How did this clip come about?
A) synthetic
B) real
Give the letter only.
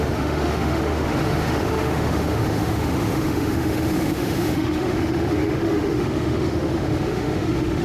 A